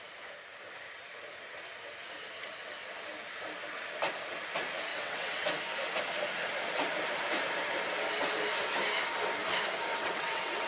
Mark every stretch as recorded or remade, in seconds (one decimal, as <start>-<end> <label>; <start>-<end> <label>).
0.0-4.9 recorded; 4.9-5.5 remade; 5.5-9.9 recorded; 9.9-10.7 remade